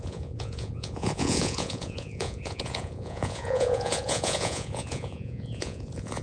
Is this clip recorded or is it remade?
remade